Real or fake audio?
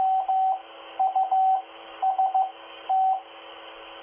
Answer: real